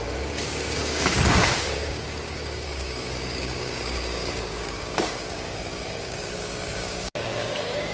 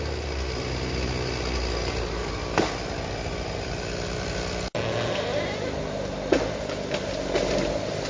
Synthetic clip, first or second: first